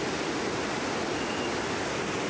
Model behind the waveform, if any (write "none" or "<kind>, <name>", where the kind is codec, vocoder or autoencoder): none